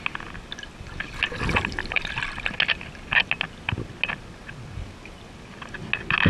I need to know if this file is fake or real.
real